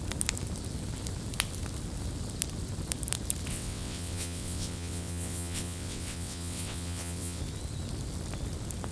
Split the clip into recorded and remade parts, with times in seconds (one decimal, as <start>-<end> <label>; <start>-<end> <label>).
0.0-3.5 recorded; 3.5-7.4 remade; 7.4-8.9 recorded